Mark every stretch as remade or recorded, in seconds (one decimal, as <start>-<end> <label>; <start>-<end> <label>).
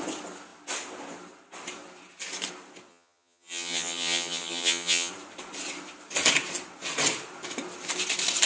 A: 0.0-2.9 recorded; 2.9-5.1 remade; 5.1-8.5 recorded